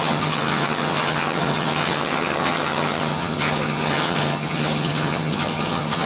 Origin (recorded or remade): remade